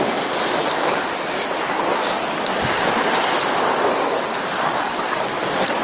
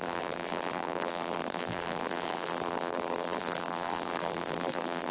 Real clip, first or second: first